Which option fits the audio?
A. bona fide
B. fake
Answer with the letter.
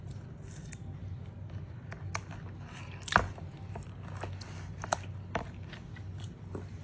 A